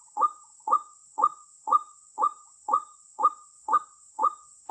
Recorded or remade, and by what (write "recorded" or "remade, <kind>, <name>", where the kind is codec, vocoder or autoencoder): remade, vocoder, Vocos